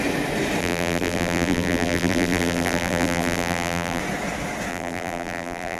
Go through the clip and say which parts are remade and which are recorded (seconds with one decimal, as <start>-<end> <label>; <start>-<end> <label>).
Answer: 0.0-0.6 recorded; 0.6-4.0 remade; 4.0-4.7 recorded; 4.7-5.8 remade